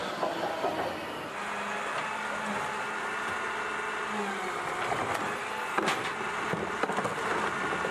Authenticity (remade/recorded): recorded